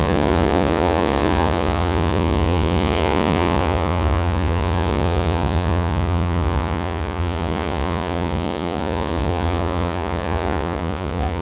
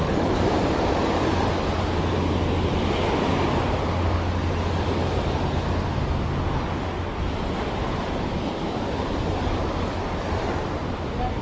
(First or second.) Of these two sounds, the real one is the second